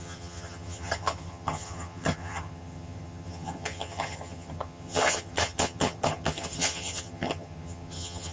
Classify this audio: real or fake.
fake